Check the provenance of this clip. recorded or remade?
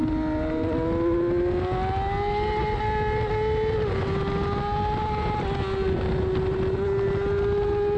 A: recorded